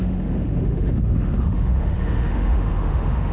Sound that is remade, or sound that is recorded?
remade